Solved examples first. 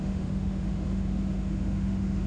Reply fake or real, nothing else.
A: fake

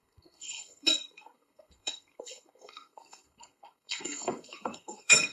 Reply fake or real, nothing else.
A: fake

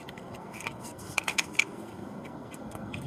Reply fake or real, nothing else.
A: fake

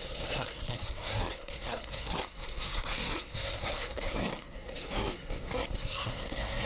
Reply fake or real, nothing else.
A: fake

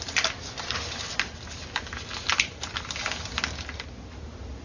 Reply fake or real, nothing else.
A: real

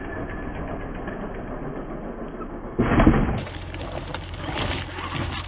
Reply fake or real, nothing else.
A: real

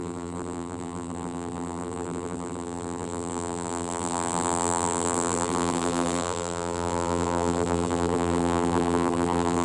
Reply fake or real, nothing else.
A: fake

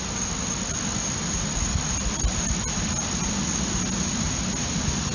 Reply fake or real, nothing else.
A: real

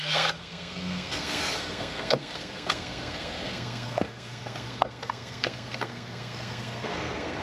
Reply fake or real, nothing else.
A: fake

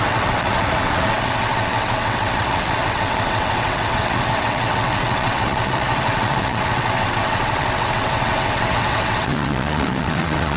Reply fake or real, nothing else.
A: fake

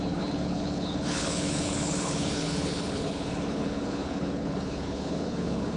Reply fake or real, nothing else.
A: fake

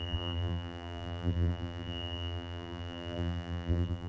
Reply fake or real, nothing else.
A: fake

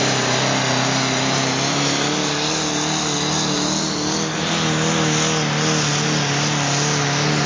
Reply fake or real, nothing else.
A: real